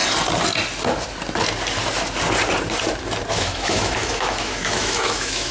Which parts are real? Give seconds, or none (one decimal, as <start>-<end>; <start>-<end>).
0.0-3.3